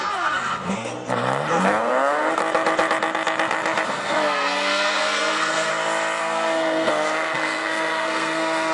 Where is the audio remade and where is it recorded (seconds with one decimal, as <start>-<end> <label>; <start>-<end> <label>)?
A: 0.0-0.9 remade; 0.9-1.5 recorded; 1.5-2.4 remade; 2.4-3.9 recorded; 3.9-5.7 remade; 5.7-6.2 recorded; 6.2-8.7 remade